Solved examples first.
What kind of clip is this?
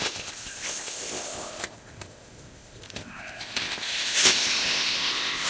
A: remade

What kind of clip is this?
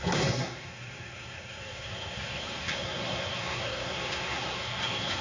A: remade